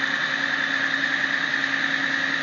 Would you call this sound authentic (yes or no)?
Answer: yes